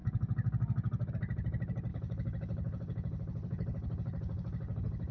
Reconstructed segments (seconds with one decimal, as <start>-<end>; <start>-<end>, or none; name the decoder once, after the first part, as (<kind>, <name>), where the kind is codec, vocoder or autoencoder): 1.9-5.1 (codec, HILCodec)

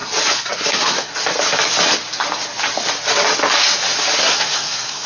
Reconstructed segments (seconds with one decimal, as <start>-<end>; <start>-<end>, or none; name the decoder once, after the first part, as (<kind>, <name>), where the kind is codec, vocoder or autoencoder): 0.7-1.1 (codec, SNAC); 4.2-5.1

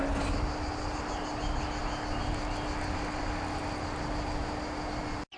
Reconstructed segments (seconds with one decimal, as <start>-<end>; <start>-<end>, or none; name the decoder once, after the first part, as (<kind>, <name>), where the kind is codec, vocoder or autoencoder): none

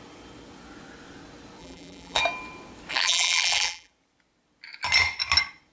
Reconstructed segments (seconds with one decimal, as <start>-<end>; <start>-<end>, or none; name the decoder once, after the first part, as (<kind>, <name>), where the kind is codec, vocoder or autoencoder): 1.6-2.2 (vocoder, BigVGAN v2); 2.9-3.9

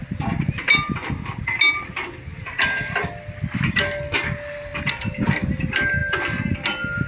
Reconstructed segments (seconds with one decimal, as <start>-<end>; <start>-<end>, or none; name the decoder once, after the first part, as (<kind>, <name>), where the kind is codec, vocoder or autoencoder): none